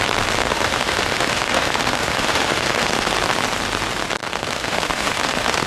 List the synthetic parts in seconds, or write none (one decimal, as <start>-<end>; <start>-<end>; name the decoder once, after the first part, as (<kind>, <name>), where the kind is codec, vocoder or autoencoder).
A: 0.4-3.1 (autoencoder, DAC-VAE); 4.2-5.7